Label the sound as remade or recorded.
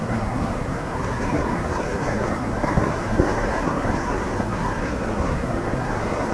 remade